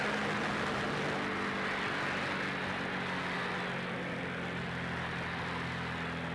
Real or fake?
real